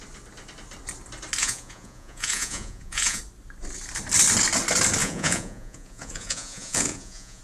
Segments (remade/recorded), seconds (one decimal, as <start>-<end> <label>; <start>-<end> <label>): 0.0-1.4 recorded; 1.4-3.2 remade; 3.2-5.0 recorded; 5.0-7.4 remade